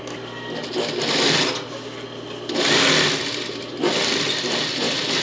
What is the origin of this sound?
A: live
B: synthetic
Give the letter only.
A